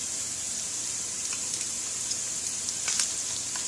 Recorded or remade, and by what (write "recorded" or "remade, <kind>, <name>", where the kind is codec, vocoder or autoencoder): recorded